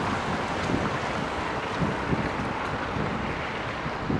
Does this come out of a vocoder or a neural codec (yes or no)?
no